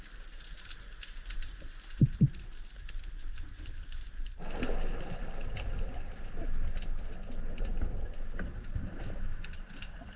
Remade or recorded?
recorded